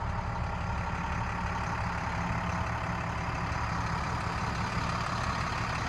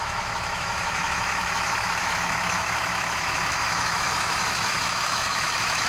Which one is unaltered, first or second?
first